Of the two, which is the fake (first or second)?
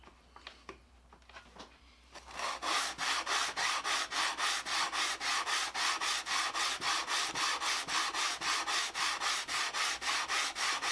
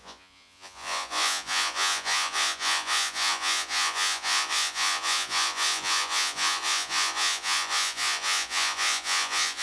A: second